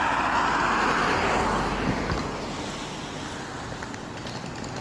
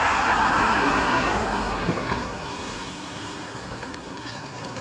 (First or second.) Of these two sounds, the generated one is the second